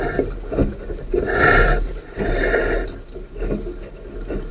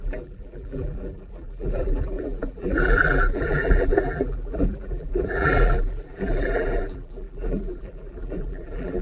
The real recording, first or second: first